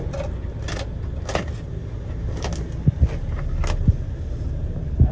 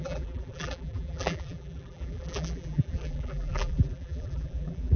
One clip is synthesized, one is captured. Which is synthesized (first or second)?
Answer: second